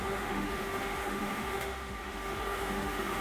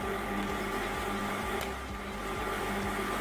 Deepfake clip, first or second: first